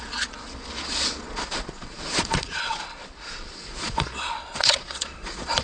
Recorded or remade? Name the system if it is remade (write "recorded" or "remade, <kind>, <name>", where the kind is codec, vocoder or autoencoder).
remade, vocoder, Vocos